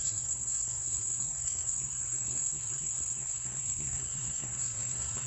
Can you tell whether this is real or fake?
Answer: fake